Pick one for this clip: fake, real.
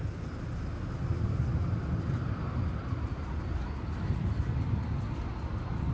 real